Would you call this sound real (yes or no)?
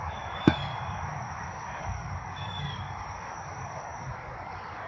no